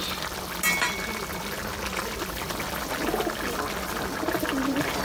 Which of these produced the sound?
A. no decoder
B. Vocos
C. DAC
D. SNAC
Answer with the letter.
A